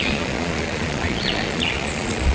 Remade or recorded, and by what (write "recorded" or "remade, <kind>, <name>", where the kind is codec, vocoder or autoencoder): remade, vocoder, Vocos